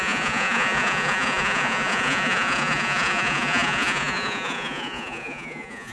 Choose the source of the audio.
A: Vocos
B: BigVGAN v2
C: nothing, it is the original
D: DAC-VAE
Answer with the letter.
A